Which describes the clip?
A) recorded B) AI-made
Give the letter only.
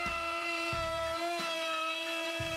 B